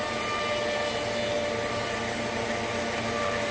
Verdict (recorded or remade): recorded